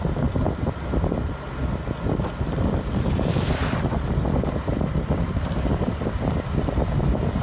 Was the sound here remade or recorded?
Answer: recorded